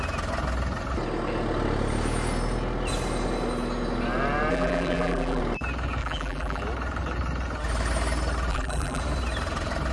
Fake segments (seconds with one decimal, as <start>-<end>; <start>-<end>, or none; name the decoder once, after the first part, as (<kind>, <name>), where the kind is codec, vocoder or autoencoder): 4.5-5.4 (vocoder, BigVGAN v2); 6.0-6.6; 8.5-9.0